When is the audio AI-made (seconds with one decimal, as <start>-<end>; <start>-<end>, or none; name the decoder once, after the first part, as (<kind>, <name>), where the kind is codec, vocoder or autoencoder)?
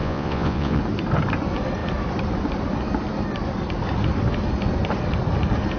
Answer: 0.0-0.8 (vocoder, Vocos)